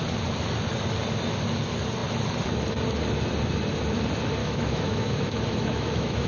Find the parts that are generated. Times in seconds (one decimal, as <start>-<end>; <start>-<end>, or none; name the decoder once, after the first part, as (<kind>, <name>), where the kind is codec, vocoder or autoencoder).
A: 4.4-6.3 (autoencoder, DAC-VAE)